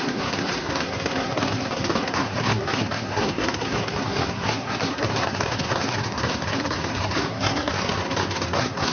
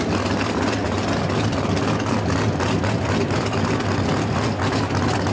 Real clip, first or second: second